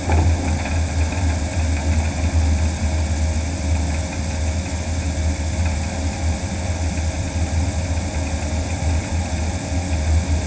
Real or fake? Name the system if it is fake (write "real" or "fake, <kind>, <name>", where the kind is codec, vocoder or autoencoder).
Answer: real